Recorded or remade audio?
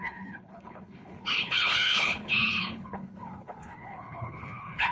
remade